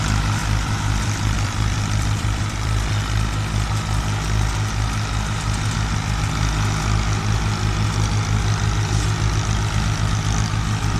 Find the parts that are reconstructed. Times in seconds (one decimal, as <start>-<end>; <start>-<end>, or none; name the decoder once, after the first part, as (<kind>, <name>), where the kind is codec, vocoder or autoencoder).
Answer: 0.4-2.9 (vocoder, BigVGAN v2)

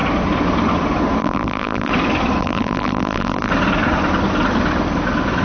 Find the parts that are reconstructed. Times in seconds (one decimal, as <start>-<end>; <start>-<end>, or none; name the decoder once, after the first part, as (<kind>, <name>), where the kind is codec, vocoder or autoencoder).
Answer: 1.2-1.9 (vocoder, BigVGAN v2); 2.4-3.5

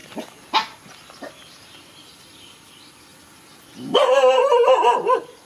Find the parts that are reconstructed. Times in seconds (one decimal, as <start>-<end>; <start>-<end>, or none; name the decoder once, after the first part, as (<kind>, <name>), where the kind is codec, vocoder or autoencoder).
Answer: none

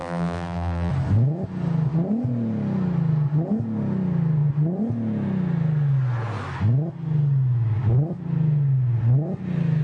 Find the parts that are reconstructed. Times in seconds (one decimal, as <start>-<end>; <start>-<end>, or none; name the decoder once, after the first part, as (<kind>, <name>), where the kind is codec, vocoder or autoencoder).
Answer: 0.0-0.9 (vocoder, BigVGAN v2)

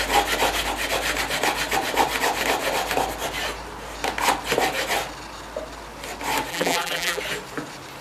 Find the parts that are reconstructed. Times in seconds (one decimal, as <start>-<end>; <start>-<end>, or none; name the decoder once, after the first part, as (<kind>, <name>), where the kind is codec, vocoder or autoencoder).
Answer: 6.5-7.2 (vocoder, BigVGAN v2)

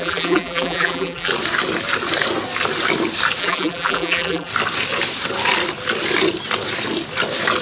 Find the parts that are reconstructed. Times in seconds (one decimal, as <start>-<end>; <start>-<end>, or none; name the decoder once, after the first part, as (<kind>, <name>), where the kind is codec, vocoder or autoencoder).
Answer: 0.0-1.3 (vocoder, BigVGAN v2); 3.4-4.5

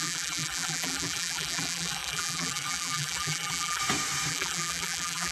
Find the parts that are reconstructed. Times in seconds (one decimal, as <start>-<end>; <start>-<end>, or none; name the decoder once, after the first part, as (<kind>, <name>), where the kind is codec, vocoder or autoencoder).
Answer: 0.0-3.8 (vocoder, BigVGAN v2); 4.3-5.3